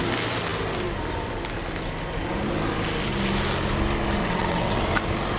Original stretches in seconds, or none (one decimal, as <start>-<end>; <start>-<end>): 0.0-4.2; 4.8-5.4